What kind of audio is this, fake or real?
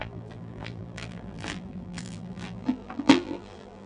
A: fake